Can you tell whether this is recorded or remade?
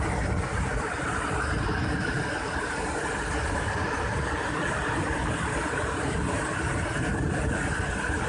recorded